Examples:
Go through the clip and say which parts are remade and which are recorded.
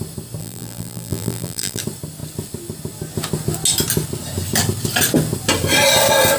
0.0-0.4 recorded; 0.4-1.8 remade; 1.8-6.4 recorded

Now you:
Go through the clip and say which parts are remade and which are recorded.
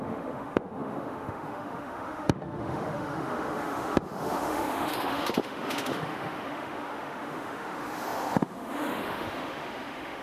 0.0-10.2 remade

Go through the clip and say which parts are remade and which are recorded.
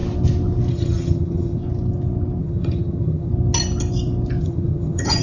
0.0-0.7 recorded; 0.7-1.6 remade; 1.6-2.4 recorded; 2.4-3.3 remade; 3.3-4.4 recorded; 4.4-5.2 remade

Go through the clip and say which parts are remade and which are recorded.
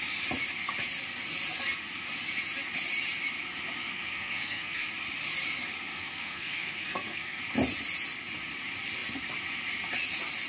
0.0-3.9 recorded; 3.9-4.9 remade; 4.9-5.9 recorded; 5.9-7.4 remade; 7.4-10.5 recorded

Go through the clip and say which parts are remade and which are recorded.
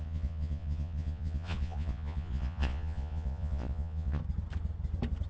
0.0-4.2 remade; 4.2-5.3 recorded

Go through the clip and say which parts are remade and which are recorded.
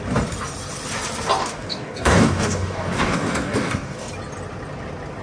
0.0-1.4 recorded; 1.4-4.1 remade; 4.1-5.2 recorded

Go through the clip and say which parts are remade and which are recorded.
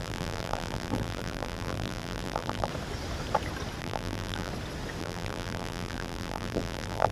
0.0-2.7 remade; 2.7-3.8 recorded; 3.8-4.5 remade; 4.5-5.0 recorded; 5.0-7.1 remade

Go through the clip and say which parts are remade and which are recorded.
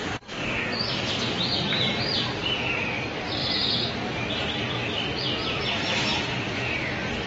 0.0-2.7 remade; 2.7-6.1 recorded; 6.1-6.6 remade; 6.6-7.3 recorded